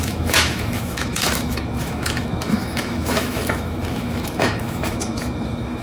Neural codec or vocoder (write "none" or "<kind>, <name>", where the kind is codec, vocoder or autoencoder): autoencoder, DAC-VAE